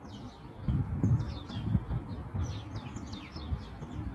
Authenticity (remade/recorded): recorded